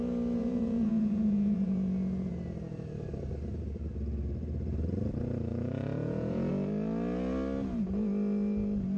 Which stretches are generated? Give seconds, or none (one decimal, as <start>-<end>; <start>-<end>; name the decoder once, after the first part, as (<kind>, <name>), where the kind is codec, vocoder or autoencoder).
0.4-2.3 (vocoder, Vocos); 5.5-6.5